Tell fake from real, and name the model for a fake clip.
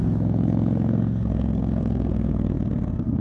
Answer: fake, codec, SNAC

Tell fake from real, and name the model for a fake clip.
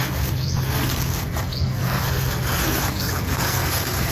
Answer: fake, codec, SNAC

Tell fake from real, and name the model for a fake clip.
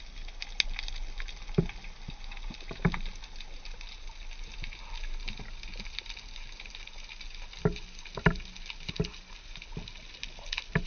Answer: real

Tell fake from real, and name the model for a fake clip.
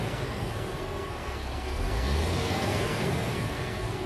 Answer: fake, codec, SNAC